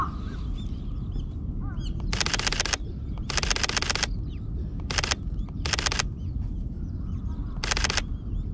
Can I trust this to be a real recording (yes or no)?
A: yes